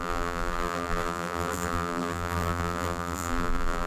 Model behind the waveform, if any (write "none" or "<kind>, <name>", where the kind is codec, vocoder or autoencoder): vocoder, BigVGAN v2